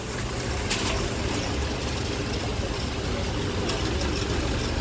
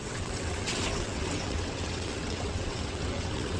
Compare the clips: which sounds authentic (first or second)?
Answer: first